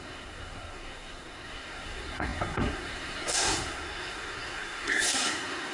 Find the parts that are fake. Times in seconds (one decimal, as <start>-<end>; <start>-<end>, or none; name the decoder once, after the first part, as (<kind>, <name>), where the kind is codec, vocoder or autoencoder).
0.0-5.7 (codec, SNAC)